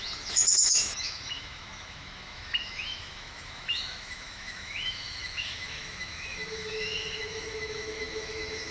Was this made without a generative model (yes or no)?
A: no